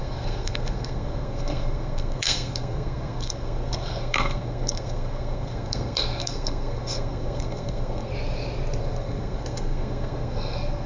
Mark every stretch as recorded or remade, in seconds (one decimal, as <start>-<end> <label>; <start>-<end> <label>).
0.0-8.1 remade; 8.1-8.8 recorded; 8.8-10.9 remade